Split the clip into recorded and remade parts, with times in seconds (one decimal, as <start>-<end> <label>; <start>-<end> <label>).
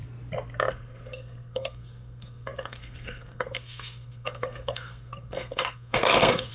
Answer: 0.0-0.7 recorded; 0.7-6.5 remade